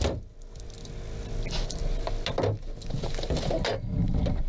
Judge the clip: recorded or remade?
recorded